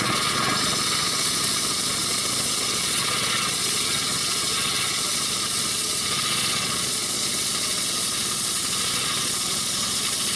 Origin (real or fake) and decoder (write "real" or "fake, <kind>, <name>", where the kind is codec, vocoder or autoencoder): fake, vocoder, Vocos